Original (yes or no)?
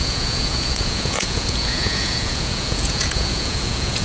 no